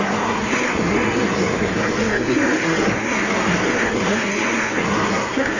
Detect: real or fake fake